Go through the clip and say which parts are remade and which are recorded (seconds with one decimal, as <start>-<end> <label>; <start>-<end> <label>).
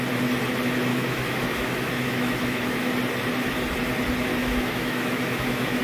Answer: 0.0-0.9 recorded; 0.9-2.9 remade; 2.9-4.3 recorded; 4.3-5.8 remade